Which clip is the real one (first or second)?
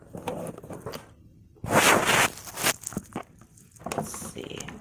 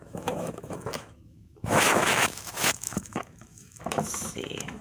first